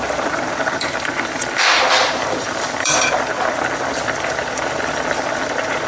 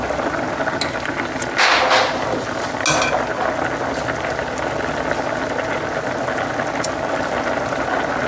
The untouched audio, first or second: second